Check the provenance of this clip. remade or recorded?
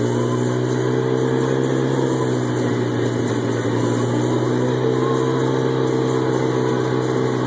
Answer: recorded